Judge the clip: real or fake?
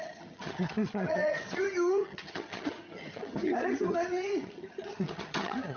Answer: fake